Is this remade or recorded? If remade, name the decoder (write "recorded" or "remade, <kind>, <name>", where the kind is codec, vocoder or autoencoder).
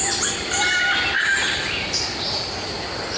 recorded